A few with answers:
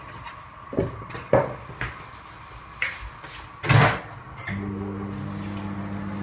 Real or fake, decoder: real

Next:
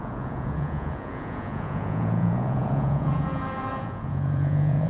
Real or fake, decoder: fake, vocoder, Vocos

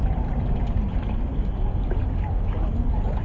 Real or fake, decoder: real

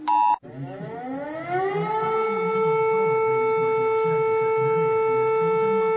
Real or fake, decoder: real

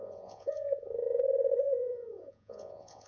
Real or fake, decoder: fake, vocoder, Vocos